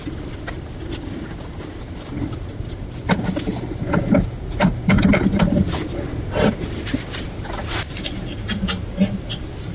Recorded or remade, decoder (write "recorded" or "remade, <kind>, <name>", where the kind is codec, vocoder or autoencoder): recorded